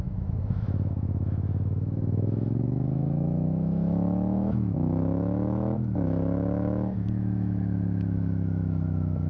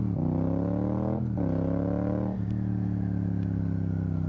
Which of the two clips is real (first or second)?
second